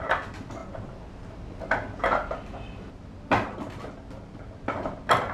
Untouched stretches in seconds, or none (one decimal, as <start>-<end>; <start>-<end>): 0.0-5.3